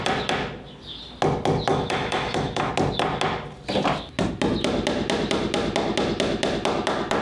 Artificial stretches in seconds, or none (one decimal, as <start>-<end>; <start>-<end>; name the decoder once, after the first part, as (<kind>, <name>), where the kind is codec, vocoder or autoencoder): 1.7-2.7 (autoencoder, DAC-VAE)